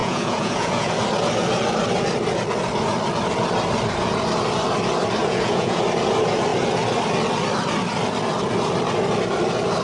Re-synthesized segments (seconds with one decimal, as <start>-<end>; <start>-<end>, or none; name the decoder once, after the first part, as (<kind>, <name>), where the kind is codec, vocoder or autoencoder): 0.0-0.9 (vocoder, Vocos); 5.2-5.8